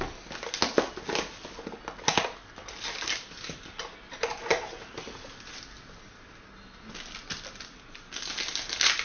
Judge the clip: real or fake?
real